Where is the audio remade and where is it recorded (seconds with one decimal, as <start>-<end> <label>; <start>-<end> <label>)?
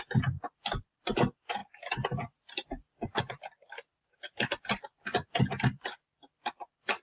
0.0-7.0 recorded